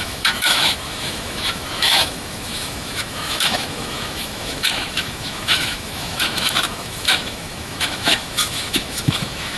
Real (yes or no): no